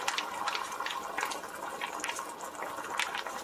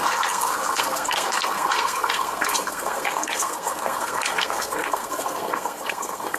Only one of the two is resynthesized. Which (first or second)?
second